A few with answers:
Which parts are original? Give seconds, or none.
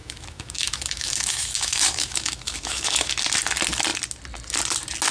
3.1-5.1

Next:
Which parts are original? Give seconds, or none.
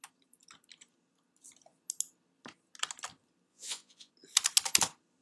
0.0-3.5; 4.1-5.2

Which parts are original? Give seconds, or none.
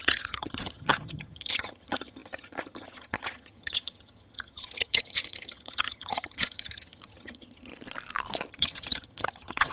7.7-8.5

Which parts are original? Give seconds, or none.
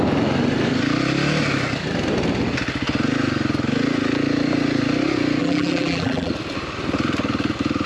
0.0-5.4; 6.3-7.9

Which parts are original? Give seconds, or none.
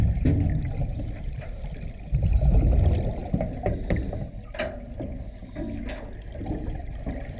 0.0-0.8; 1.6-7.4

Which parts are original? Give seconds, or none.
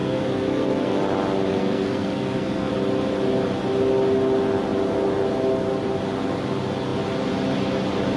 1.0-1.5; 2.7-8.2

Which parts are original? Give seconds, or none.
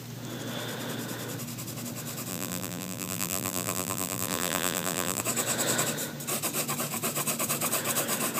0.0-2.3; 5.2-8.4